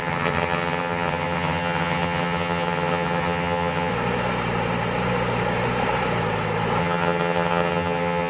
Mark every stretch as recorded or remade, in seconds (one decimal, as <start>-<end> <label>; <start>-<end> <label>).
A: 0.0-3.9 remade; 3.9-6.8 recorded; 6.8-8.3 remade